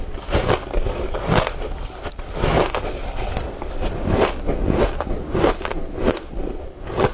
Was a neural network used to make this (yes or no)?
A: no